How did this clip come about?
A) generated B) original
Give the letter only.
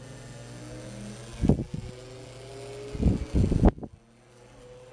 B